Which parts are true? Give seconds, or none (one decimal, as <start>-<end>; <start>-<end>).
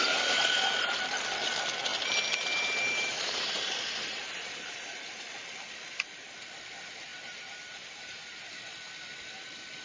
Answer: 0.0-1.9; 4.7-7.1; 8.4-9.8